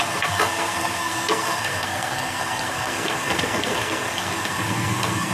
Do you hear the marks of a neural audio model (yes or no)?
yes